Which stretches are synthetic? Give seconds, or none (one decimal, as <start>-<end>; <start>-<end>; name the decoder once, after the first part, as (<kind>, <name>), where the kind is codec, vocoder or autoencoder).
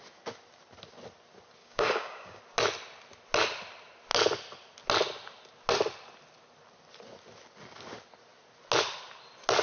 1.6-2.4 (codec, DAC)